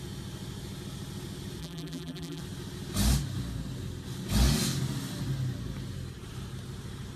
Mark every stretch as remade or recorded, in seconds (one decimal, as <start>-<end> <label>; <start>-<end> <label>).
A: 0.0-1.6 recorded; 1.6-2.4 remade; 2.4-7.2 recorded